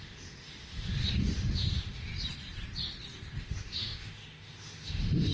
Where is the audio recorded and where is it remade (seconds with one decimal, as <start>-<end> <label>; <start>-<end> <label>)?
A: 0.0-2.1 remade; 2.1-3.4 recorded; 3.4-5.3 remade